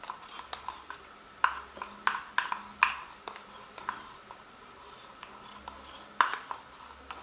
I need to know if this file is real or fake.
real